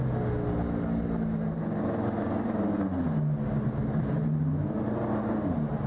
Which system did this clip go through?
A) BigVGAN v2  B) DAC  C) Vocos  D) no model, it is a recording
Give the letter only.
D